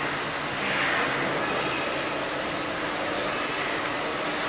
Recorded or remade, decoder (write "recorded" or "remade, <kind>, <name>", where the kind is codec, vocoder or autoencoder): recorded